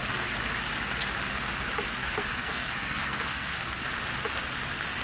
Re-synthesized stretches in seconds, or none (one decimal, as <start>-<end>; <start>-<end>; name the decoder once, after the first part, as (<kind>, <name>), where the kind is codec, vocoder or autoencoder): 2.0-3.9 (codec, SNAC)